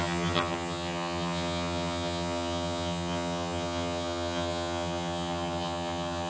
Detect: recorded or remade remade